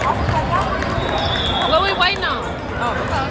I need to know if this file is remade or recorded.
recorded